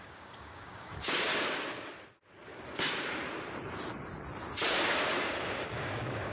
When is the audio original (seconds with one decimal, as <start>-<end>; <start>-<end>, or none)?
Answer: 1.3-4.7